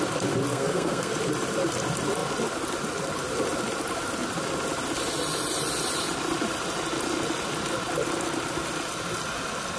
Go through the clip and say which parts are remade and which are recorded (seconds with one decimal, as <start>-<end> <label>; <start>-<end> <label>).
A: 0.0-0.5 recorded; 0.5-1.1 remade; 1.1-9.8 recorded